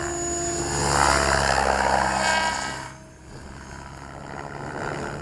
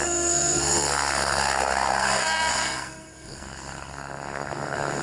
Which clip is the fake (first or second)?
second